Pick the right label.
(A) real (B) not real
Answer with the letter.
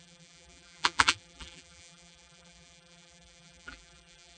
B